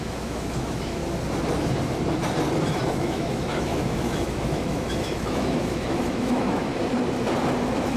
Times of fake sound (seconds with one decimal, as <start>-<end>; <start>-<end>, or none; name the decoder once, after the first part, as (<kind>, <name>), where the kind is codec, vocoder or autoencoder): 0.0-1.0 (autoencoder, DAC-VAE); 2.9-6.7; 7.6-8.0